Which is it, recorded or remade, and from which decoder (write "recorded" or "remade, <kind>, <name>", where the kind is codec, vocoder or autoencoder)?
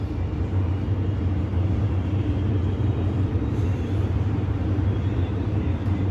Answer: remade, vocoder, BigVGAN v2